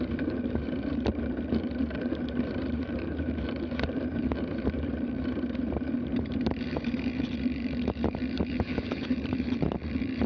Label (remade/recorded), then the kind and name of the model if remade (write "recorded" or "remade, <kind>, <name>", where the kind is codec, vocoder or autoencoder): remade, vocoder, BigVGAN v2